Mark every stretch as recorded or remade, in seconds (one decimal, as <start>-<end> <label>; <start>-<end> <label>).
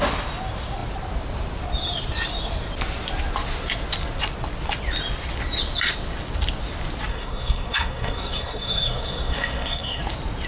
0.0-7.1 recorded; 7.1-10.0 remade; 10.0-10.5 recorded